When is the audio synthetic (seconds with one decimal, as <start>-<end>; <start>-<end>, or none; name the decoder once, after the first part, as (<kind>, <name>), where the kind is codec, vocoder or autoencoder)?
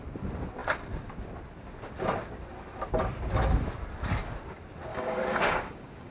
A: 4.9-6.1 (codec, DAC)